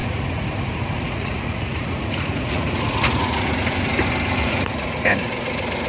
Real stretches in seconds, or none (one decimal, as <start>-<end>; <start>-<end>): 3.5-4.4; 5.5-5.9